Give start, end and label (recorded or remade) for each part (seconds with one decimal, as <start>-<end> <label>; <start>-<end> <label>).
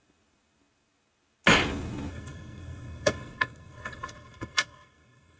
0.0-2.1 recorded; 2.1-5.4 remade